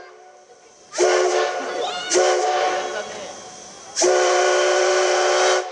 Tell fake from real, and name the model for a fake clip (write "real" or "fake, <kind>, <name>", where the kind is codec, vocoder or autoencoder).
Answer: real